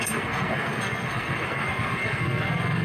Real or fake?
fake